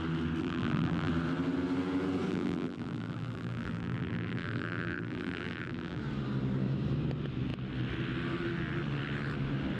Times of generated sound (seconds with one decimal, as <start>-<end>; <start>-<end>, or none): 0.4-1.1; 2.3-6.0